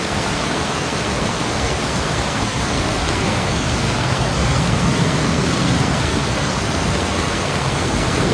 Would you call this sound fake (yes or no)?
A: yes